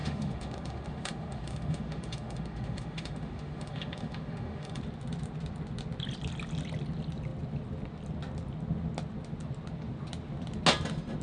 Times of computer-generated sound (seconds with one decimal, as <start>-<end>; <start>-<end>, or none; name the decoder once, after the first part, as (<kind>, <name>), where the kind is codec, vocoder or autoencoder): 0.0-4.8 (autoencoder, DAC-VAE)